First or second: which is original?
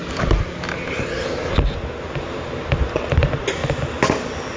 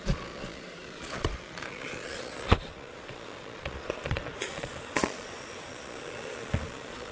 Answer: first